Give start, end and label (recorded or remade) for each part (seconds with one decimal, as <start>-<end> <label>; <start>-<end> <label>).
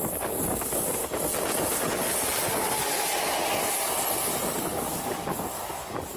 0.0-1.0 remade; 1.0-4.7 recorded; 4.7-6.2 remade